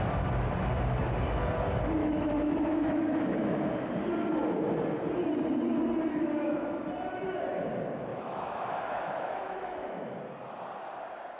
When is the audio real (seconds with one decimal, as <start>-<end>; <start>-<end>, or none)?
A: 0.0-2.0; 3.7-6.1; 6.8-8.1; 10.2-11.4